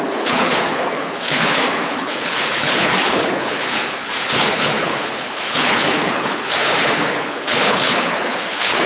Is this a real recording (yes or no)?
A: no